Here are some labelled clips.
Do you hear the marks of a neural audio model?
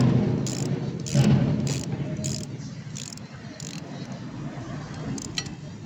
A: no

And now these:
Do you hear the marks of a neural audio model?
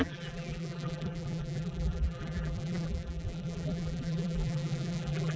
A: yes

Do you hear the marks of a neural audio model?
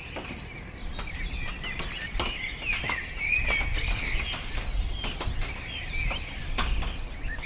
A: no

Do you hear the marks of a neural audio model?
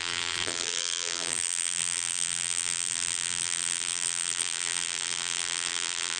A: yes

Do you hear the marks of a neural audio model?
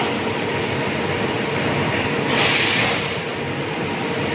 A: yes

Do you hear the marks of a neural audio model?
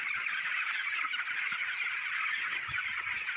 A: no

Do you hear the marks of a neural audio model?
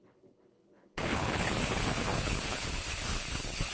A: yes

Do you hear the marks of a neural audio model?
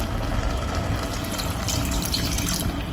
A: no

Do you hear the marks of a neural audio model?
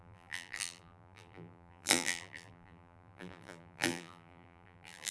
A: yes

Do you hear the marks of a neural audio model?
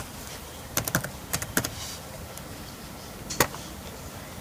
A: yes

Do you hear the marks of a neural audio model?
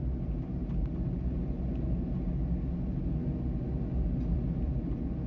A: no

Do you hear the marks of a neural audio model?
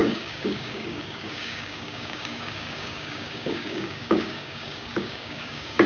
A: yes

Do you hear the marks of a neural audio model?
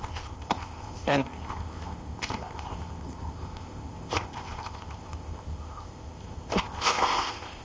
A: yes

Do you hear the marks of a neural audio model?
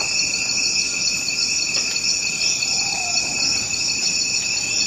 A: no